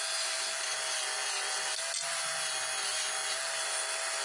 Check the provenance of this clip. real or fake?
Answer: real